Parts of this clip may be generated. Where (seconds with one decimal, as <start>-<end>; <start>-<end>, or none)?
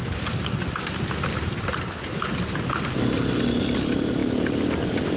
4.2-5.2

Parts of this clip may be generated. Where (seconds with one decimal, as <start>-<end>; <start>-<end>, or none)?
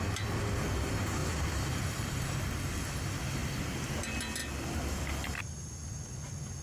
1.2-2.1; 3.4-4.0; 4.4-5.9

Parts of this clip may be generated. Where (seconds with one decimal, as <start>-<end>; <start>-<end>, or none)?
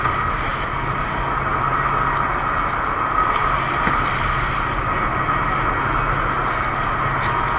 none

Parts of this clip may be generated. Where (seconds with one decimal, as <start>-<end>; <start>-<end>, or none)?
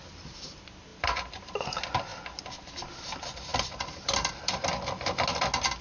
0.9-1.5; 3.5-4.6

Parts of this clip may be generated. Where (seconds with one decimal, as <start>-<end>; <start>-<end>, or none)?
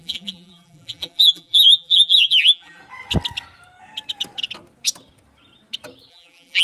0.0-2.8; 6.1-6.6